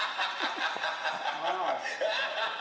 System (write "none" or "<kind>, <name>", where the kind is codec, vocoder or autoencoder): none